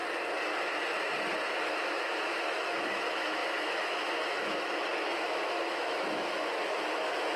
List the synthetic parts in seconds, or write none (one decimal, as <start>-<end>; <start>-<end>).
1.6-7.4